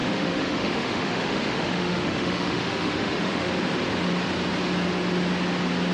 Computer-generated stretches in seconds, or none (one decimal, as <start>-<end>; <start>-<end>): 0.0-3.5